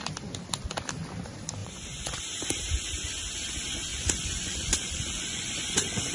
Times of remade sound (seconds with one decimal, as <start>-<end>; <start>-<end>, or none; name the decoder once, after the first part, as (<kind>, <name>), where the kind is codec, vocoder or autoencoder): 1.6-2.2 (vocoder, Vocos); 3.9-6.1